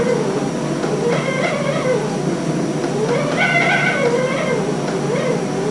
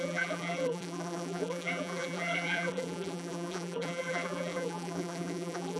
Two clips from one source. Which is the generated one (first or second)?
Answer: second